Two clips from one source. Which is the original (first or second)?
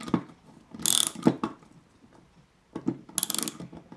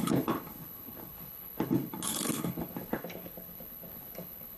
first